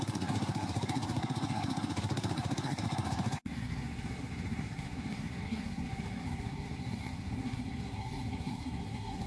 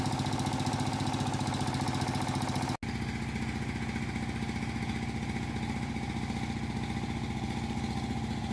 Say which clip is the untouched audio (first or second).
second